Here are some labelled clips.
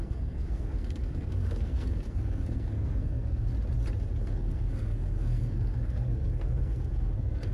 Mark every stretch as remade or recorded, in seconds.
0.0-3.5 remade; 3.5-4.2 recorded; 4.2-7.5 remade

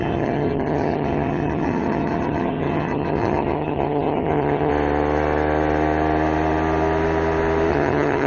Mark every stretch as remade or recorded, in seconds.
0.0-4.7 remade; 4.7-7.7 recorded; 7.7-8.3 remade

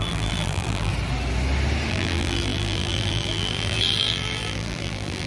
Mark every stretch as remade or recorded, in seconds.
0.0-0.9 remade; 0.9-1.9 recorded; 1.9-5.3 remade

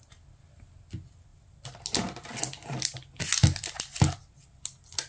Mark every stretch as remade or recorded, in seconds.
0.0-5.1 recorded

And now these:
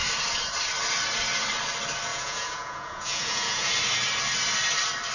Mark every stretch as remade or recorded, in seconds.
0.0-2.1 recorded; 2.1-3.7 remade; 3.7-5.1 recorded

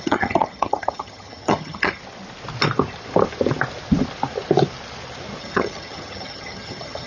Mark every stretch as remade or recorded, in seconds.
0.0-2.0 remade; 2.0-5.4 recorded; 5.4-7.1 remade